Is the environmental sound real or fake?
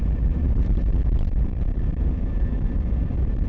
fake